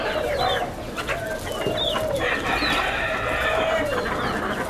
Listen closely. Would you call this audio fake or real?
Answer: real